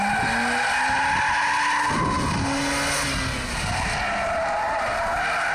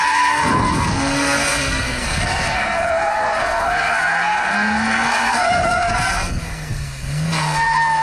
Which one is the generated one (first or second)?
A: second